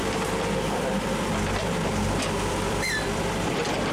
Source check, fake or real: fake